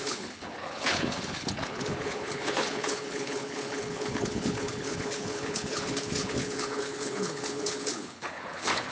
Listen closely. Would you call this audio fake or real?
fake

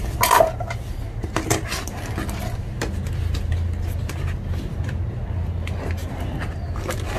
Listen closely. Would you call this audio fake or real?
real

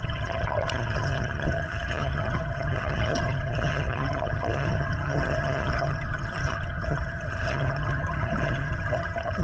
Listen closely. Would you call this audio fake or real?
fake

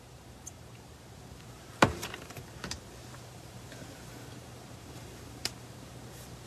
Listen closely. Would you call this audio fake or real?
fake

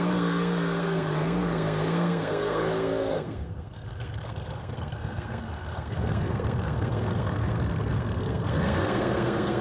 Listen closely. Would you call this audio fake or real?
fake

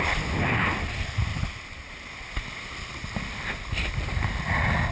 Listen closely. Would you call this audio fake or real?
real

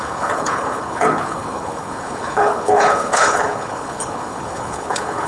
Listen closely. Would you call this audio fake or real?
fake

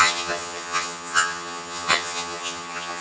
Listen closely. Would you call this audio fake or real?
fake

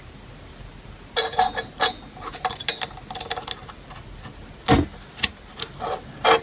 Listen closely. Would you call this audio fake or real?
real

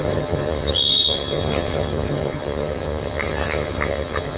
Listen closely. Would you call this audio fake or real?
fake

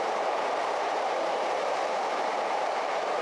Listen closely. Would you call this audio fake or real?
fake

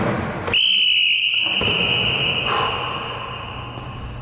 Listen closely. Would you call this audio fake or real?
real